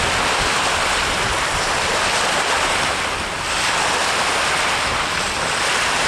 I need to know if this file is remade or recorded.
recorded